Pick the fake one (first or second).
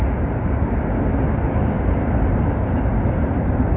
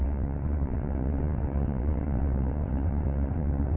second